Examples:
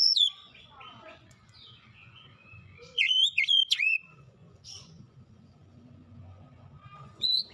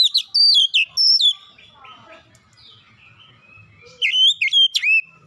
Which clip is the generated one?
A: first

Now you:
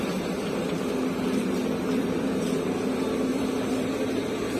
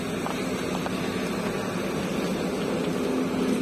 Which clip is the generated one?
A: first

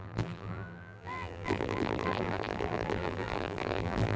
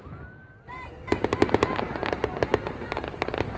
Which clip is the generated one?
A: first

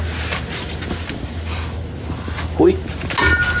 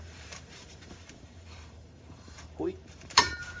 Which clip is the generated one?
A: second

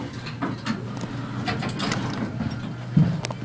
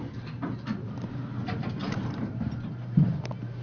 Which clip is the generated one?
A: second